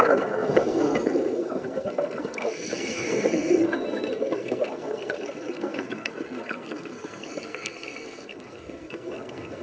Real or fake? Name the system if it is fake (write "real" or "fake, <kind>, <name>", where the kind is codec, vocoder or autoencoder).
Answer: fake, codec, SNAC